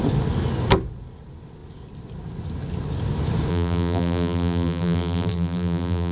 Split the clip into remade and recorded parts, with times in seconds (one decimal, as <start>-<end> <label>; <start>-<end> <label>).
0.0-3.5 recorded; 3.5-6.1 remade